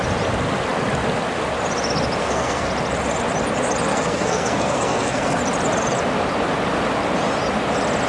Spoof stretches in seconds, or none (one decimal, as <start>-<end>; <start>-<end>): 2.2-2.7; 3.9-5.4